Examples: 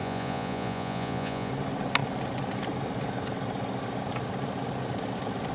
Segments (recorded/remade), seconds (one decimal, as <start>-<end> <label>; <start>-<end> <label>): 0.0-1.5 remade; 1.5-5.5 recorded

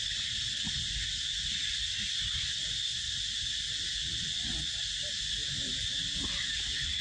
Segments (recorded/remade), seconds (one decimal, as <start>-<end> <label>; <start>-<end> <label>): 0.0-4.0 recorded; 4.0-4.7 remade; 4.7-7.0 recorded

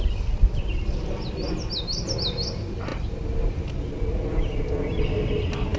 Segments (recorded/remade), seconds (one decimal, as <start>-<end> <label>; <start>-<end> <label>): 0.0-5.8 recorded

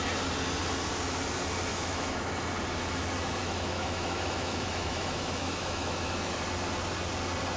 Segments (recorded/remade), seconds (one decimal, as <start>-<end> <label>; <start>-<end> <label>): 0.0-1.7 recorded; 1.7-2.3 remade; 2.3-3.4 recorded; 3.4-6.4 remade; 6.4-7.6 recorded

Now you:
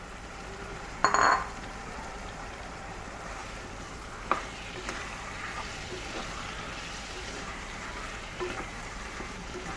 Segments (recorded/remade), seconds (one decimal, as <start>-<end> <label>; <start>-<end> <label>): 0.0-1.0 remade; 1.0-1.6 recorded; 1.6-9.8 remade

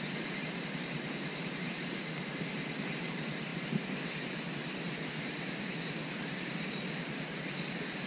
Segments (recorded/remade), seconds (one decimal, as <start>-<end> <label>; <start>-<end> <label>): 0.0-8.1 recorded